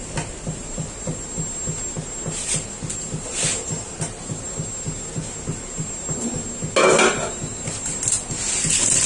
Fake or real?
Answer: real